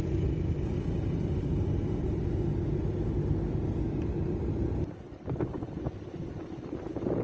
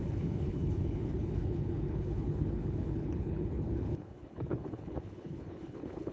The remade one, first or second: second